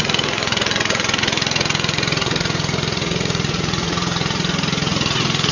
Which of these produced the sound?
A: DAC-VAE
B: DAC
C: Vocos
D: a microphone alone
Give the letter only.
C